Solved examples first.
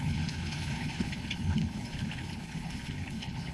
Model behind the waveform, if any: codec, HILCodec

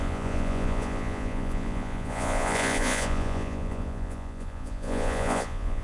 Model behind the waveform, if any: vocoder, Vocos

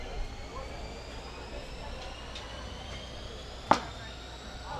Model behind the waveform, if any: none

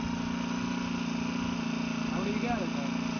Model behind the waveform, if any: none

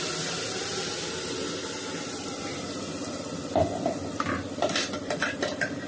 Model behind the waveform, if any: none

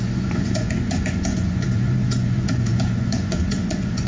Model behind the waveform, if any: vocoder, Vocos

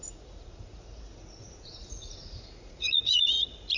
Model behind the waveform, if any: vocoder, Vocos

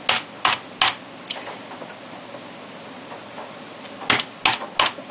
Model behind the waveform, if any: none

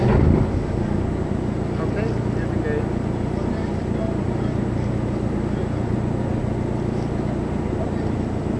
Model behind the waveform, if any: none